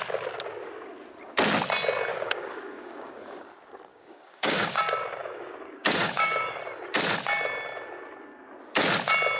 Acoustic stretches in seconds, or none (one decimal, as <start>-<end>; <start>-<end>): 0.0-2.1; 3.5-3.9; 4.8-5.2; 6.6-9.4